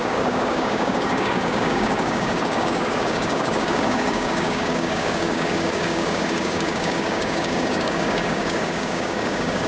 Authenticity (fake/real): fake